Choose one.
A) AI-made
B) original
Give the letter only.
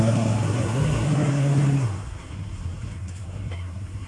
A